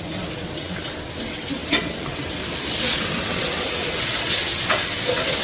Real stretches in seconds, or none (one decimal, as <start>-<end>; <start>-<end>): 2.4-2.9